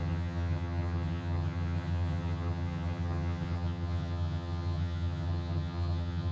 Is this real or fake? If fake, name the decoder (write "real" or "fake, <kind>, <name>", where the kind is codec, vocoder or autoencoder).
fake, vocoder, HiFi-GAN